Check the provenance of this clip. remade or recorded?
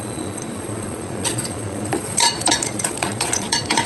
remade